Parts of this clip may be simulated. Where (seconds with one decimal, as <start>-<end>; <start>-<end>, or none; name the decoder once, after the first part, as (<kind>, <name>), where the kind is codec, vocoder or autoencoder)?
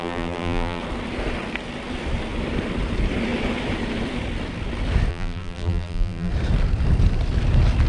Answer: 0.0-0.8 (vocoder, BigVGAN v2); 5.1-6.3